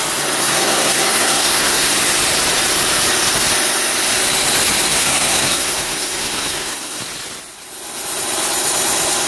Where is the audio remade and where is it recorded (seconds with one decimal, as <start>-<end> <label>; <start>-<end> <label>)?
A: 0.0-0.4 recorded; 0.4-1.9 remade; 1.9-4.9 recorded; 4.9-7.0 remade; 7.0-9.3 recorded